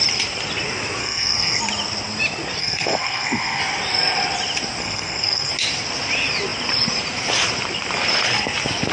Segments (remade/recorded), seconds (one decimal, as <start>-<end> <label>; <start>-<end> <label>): 0.0-1.0 recorded; 1.0-1.6 remade; 1.6-2.6 recorded; 2.6-3.6 remade; 3.6-4.8 recorded; 4.8-5.5 remade; 5.5-8.9 recorded